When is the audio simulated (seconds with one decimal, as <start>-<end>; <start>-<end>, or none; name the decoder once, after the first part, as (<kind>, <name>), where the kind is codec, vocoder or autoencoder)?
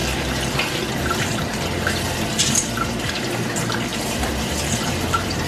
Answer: 3.9-5.5 (vocoder, BigVGAN v2)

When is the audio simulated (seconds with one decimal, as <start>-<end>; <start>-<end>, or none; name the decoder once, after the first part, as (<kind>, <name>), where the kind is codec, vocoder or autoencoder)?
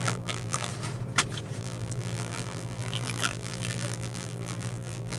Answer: 0.0-0.7 (vocoder, BigVGAN v2); 1.6-5.2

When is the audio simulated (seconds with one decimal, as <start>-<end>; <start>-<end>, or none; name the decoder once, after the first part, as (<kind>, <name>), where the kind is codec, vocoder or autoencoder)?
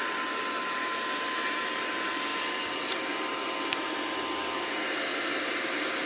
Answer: none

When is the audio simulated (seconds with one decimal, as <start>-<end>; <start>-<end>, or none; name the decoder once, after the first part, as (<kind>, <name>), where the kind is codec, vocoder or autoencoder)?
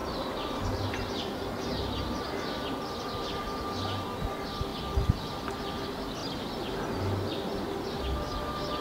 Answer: 0.0-3.1 (vocoder, BigVGAN v2)